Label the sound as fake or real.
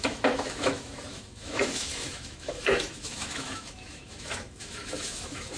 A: fake